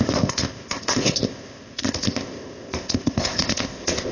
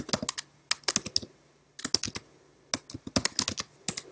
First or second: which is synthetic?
first